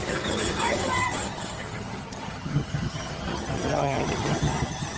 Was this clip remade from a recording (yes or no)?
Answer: yes